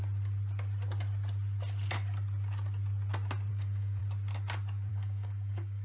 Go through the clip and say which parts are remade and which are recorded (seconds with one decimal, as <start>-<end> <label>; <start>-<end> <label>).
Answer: 0.0-3.5 recorded; 3.5-4.0 remade; 4.0-4.9 recorded; 4.9-5.8 remade